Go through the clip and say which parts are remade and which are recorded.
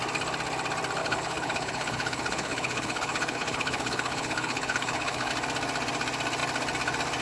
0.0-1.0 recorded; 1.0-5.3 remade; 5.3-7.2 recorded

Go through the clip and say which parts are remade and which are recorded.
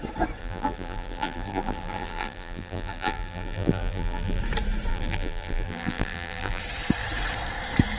0.0-0.4 recorded; 0.4-4.4 remade; 4.4-4.9 recorded; 4.9-6.6 remade; 6.6-8.0 recorded